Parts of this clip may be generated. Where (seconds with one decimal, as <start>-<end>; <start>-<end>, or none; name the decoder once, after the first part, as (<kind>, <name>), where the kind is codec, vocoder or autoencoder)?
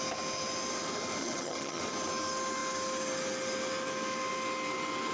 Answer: 1.2-1.8 (vocoder, HiFi-GAN)